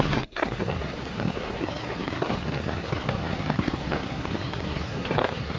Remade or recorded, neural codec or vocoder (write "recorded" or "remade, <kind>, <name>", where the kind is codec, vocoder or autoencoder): remade, codec, SNAC